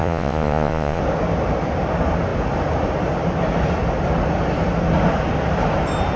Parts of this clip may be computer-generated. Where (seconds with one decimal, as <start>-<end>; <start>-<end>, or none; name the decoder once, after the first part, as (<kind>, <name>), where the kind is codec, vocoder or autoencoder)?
0.0-1.0 (vocoder, Vocos)